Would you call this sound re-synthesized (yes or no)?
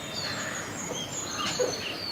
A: no